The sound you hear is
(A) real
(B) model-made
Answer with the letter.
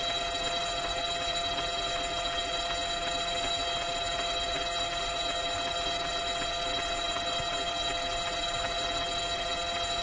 B